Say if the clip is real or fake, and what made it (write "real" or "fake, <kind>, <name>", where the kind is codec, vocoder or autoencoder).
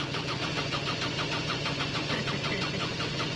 fake, vocoder, Vocos